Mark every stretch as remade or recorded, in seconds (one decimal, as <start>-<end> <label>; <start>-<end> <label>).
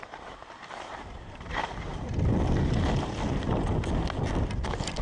0.0-1.9 remade; 1.9-5.0 recorded